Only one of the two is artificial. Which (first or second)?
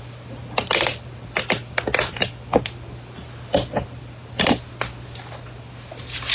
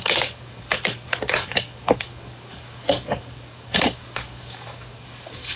second